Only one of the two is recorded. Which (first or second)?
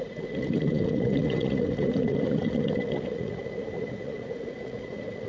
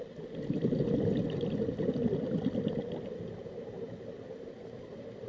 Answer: second